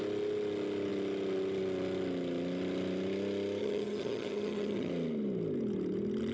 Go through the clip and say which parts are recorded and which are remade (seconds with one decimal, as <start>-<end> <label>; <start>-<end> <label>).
0.0-3.6 recorded; 3.6-4.9 remade; 4.9-6.3 recorded